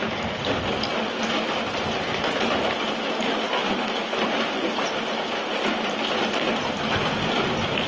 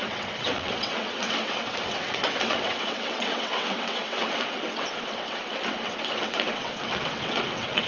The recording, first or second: first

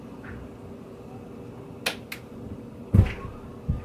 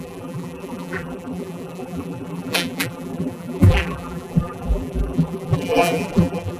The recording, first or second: first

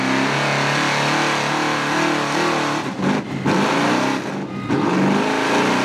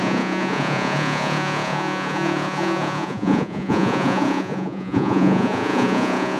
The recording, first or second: first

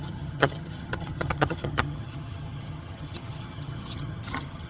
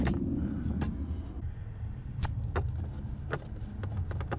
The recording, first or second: second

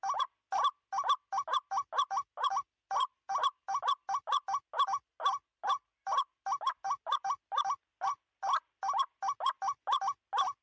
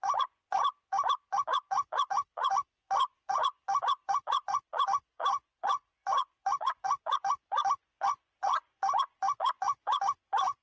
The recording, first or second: first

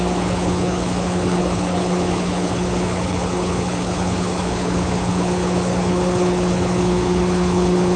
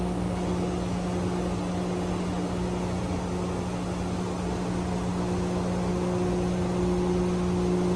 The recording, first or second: second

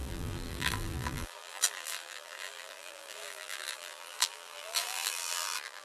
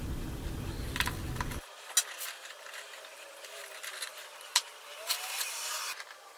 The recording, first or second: second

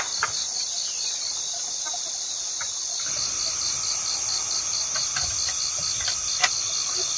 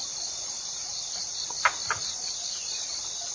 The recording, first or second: first